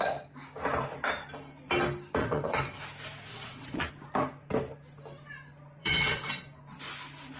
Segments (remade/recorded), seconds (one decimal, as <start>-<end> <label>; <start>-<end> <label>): 0.0-2.2 recorded; 2.2-2.8 remade; 2.8-3.3 recorded; 3.3-3.9 remade; 3.9-5.8 recorded; 5.8-6.3 remade; 6.3-7.4 recorded